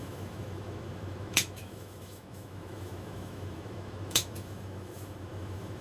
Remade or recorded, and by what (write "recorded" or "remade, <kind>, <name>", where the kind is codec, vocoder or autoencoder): remade, autoencoder, DAC-VAE